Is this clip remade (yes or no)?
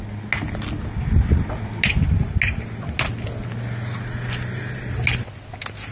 no